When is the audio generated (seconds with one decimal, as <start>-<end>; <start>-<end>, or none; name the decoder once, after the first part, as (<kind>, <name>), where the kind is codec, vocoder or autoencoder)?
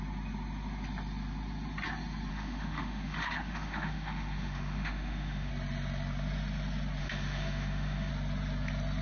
2.3-5.5 (autoencoder, DAC-VAE); 7.0-8.1